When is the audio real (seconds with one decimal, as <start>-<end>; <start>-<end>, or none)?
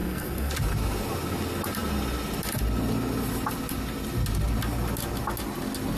0.5-6.0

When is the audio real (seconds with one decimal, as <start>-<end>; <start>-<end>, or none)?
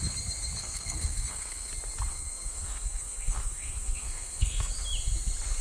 0.0-0.6; 1.7-2.1; 4.7-5.6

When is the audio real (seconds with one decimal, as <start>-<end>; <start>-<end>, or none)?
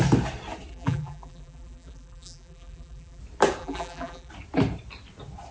0.0-0.7; 3.2-3.6; 4.3-5.5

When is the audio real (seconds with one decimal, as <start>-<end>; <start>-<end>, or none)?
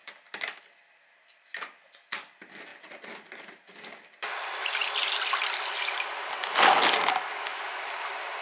0.0-8.4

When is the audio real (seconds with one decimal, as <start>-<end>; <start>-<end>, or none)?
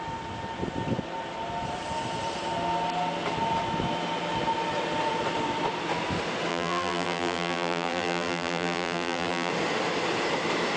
0.0-6.5; 9.5-10.8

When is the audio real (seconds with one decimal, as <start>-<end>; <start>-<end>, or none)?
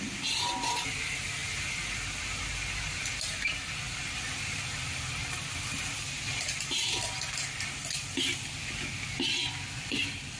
0.0-10.4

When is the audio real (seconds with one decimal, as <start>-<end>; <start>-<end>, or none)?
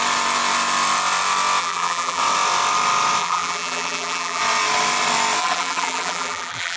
0.0-1.6; 2.2-3.2; 4.4-5.4